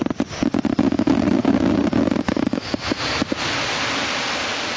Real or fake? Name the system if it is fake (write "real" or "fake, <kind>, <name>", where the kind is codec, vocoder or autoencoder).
real